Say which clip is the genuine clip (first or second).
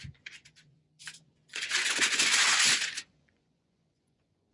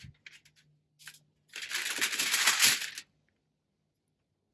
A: second